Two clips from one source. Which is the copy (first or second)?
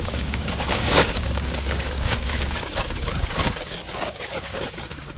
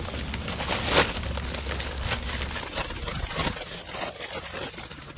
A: first